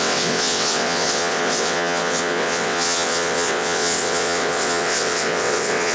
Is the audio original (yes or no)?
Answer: no